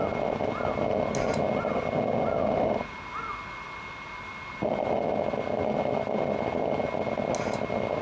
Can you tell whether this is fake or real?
real